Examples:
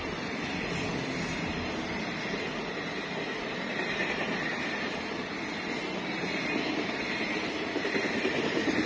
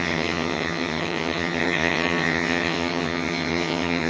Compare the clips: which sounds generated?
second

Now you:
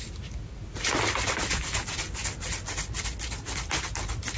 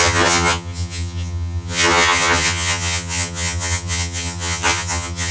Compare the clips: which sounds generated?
second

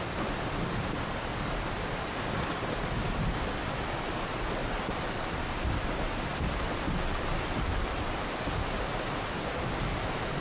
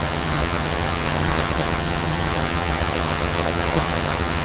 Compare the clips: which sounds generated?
second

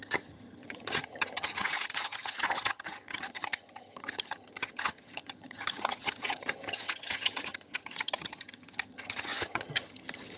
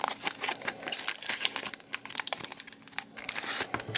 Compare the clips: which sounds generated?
first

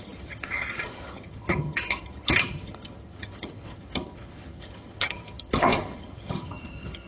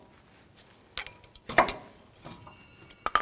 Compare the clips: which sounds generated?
first